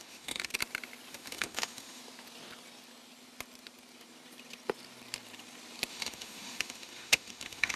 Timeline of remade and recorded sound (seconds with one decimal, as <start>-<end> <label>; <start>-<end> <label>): 0.0-0.5 remade; 0.5-1.1 recorded; 1.1-2.0 remade; 2.0-5.9 recorded; 5.9-7.8 remade